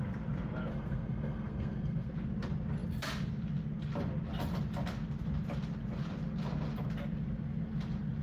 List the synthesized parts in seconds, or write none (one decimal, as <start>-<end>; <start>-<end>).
0.7-2.1